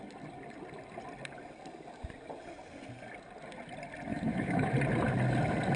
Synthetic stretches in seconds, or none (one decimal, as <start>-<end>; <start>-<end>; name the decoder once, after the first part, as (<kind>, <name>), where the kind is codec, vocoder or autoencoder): 4.1-4.7 (autoencoder, DAC-VAE)